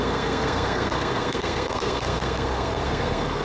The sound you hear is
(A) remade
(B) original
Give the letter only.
A